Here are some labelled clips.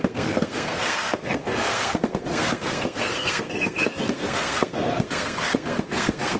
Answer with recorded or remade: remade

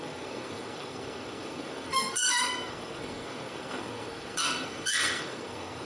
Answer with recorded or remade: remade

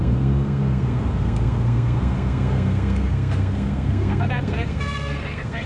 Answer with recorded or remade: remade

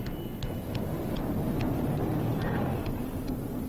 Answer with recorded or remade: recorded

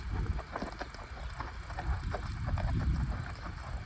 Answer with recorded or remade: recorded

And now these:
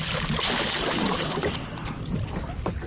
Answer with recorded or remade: recorded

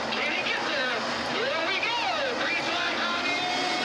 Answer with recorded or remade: recorded